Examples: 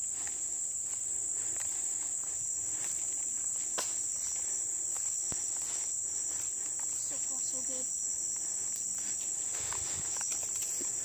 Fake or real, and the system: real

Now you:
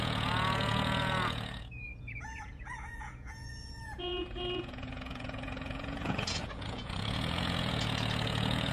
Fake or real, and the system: fake, vocoder, Vocos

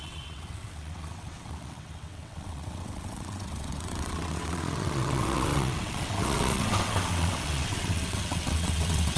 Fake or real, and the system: fake, vocoder, WaveNeXt